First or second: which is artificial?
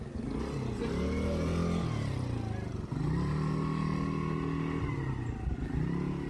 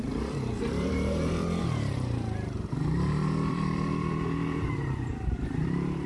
second